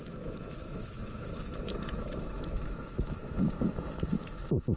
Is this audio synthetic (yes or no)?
yes